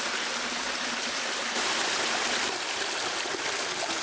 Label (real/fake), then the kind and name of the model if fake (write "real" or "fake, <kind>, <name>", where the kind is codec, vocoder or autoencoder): real